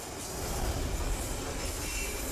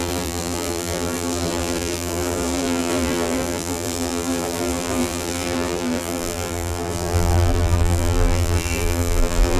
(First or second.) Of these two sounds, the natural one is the first